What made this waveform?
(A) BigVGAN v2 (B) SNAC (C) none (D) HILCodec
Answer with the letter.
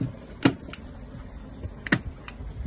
C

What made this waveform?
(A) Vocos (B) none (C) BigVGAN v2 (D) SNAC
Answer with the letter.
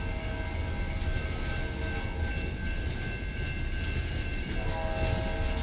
B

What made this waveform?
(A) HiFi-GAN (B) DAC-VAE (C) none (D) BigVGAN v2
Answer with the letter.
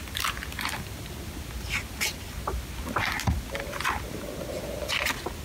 C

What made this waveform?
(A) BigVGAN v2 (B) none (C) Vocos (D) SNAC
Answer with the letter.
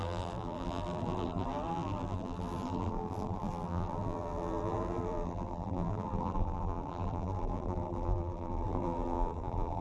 A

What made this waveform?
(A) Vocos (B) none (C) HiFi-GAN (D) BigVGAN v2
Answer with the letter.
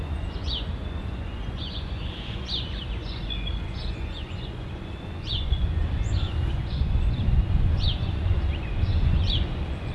A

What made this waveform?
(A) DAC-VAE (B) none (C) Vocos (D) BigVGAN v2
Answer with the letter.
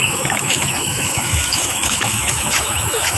A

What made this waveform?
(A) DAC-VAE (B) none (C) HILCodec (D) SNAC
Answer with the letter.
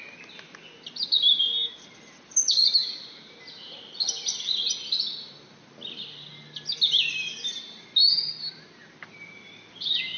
B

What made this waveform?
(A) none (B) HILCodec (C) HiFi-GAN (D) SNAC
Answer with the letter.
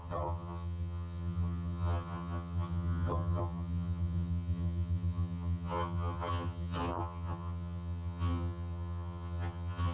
C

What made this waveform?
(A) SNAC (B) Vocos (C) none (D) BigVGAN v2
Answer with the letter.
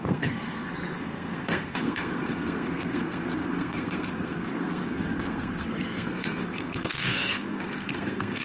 A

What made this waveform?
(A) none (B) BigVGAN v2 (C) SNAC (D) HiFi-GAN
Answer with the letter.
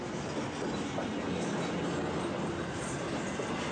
A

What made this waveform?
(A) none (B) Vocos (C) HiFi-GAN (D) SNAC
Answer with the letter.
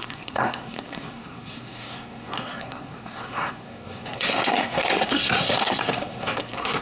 D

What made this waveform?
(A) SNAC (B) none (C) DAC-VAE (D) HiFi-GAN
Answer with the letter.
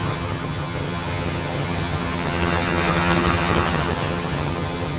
D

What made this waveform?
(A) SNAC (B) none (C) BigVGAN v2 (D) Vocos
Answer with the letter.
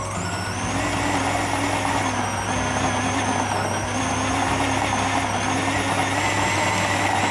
B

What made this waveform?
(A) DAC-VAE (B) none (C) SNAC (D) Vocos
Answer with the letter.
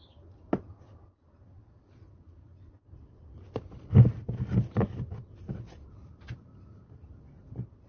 B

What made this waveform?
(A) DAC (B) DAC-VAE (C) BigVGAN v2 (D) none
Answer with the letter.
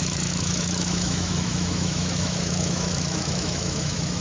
B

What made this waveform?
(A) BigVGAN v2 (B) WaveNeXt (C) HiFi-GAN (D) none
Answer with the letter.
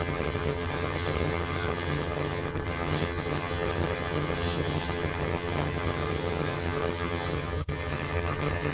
C